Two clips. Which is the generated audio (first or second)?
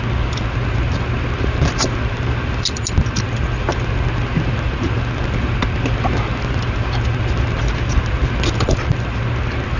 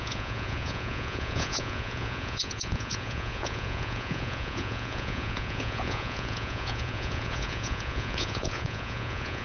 second